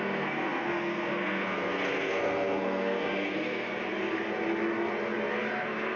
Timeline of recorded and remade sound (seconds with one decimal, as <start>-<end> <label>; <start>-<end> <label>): 0.0-3.7 remade; 3.7-5.6 recorded; 5.6-6.0 remade